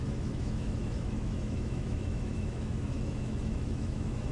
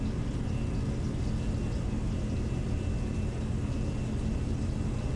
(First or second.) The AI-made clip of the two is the first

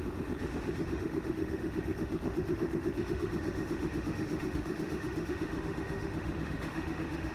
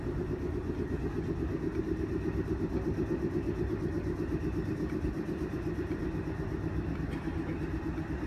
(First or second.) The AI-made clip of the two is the first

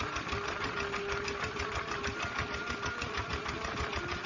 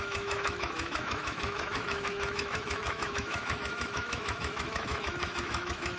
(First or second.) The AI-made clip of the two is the second